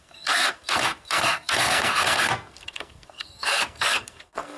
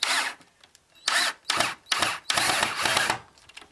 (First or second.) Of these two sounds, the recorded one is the second